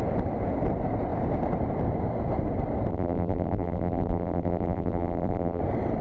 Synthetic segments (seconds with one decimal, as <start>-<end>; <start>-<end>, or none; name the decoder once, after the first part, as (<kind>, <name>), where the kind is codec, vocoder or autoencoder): 2.9-5.6 (vocoder, BigVGAN v2)